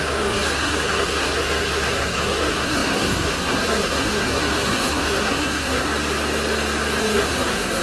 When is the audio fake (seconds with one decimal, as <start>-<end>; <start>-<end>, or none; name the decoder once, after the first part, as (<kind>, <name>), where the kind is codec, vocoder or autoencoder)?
0.0-5.9 (codec, SNAC); 7.0-7.8